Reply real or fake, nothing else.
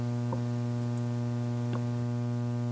real